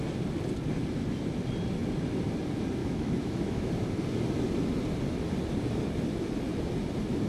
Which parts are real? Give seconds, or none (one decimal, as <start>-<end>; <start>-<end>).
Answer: 0.0-2.8; 3.7-7.3